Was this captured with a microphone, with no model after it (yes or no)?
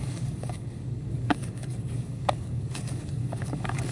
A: no